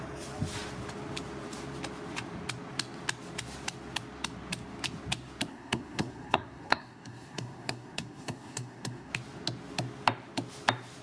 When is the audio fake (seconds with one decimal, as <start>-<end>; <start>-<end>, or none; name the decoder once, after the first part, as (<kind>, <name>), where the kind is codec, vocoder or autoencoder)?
5.5-9.1 (codec, SNAC)